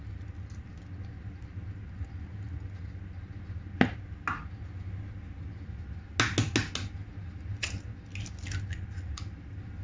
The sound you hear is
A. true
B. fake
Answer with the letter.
A